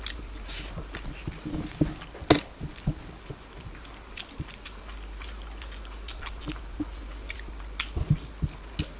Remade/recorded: recorded